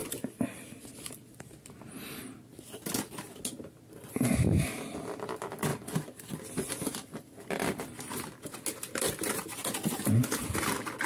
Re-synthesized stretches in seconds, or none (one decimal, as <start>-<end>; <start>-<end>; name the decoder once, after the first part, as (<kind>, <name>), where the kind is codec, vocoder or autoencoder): 0.0-1.4 (vocoder, BigVGAN v2); 5.7-7.8